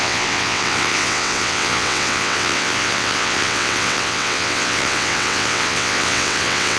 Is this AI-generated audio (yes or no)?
yes